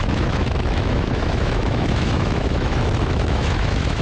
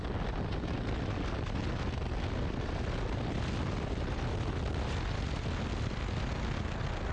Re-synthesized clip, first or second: first